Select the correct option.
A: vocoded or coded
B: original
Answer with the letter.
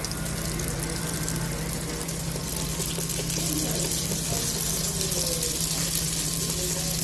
B